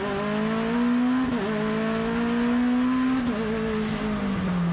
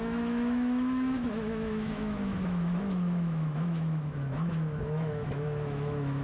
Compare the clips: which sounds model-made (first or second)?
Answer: second